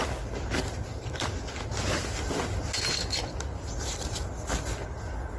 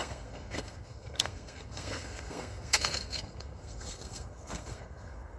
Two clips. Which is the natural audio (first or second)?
first